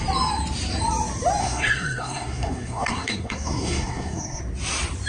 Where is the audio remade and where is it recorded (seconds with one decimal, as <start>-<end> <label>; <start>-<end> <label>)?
0.0-1.4 recorded; 1.4-4.4 remade; 4.4-5.1 recorded